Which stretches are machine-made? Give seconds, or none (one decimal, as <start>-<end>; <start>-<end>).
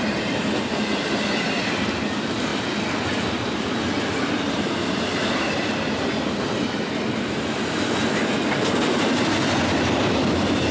0.0-10.7